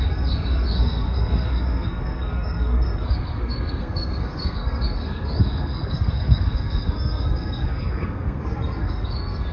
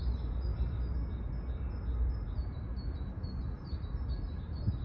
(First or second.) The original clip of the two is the second